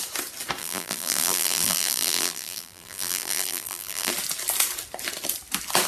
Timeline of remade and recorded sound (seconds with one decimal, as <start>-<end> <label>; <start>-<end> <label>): 0.0-0.6 recorded; 0.6-4.1 remade; 4.1-5.9 recorded